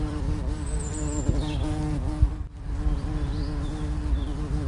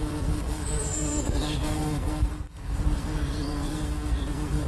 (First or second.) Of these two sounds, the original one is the first